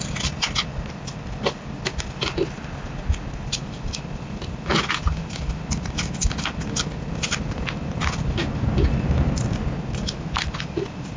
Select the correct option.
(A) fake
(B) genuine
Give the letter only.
B